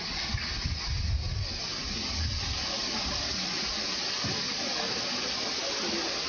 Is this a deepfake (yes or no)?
no